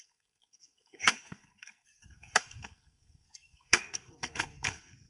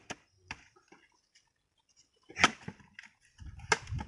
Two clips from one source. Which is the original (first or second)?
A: second